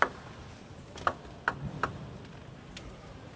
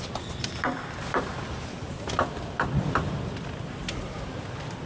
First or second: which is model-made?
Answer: second